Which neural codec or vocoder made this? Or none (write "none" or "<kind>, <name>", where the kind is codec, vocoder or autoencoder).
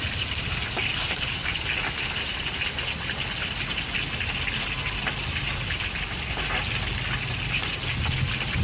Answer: none